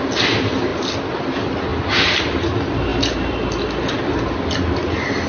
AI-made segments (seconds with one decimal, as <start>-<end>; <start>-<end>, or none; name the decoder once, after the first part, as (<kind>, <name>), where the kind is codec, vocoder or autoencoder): none